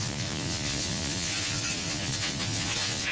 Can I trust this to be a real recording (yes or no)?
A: no